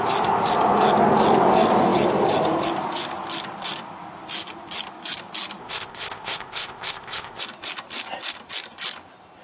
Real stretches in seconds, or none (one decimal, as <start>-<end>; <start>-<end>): 0.0-5.6; 7.4-9.4